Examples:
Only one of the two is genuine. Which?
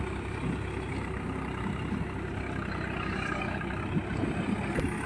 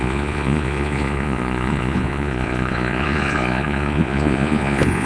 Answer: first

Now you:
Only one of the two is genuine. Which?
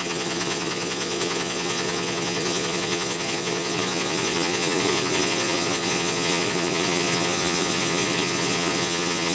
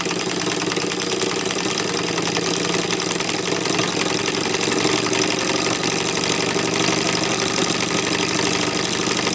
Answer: second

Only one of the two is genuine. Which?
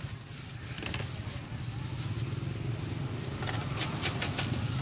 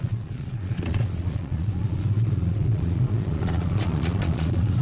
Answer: first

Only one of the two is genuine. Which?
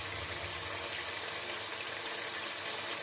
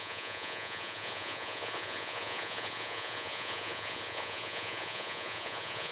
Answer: first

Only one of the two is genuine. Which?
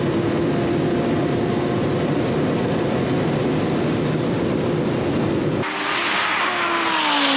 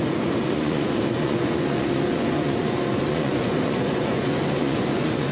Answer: first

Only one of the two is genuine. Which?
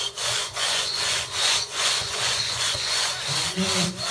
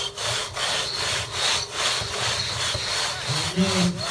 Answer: second